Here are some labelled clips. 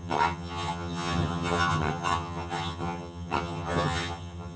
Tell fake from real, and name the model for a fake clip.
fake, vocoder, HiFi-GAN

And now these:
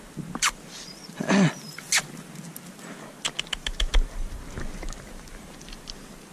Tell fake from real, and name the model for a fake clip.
real